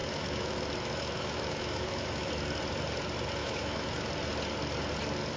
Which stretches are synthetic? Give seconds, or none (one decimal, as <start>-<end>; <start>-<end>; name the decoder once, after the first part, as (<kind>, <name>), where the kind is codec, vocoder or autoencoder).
0.0-2.3 (autoencoder, DAC-VAE); 3.4-4.1